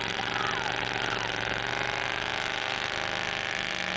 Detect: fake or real real